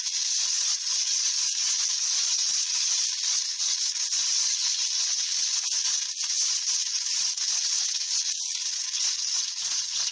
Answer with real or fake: fake